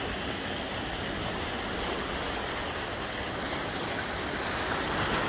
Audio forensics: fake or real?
real